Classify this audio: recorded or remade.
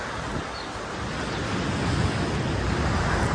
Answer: recorded